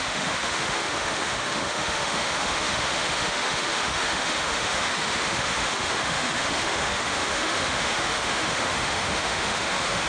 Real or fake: fake